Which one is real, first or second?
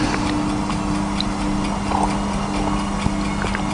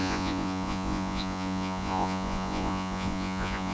first